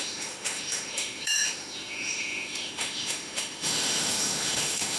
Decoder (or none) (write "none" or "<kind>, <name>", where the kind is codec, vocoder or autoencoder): autoencoder, DAC-VAE